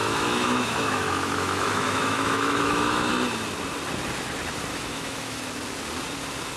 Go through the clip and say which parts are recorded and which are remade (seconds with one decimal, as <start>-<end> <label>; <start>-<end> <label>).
0.0-3.1 remade; 3.1-4.7 recorded; 4.7-5.4 remade; 5.4-6.6 recorded